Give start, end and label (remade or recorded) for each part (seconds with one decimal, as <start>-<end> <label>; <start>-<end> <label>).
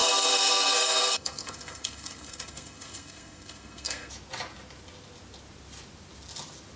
0.0-4.1 remade; 4.1-6.8 recorded